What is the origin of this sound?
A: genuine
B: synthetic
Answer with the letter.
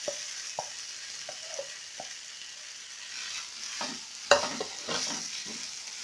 A